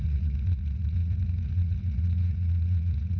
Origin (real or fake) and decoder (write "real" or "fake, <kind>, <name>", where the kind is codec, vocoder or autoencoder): fake, vocoder, Vocos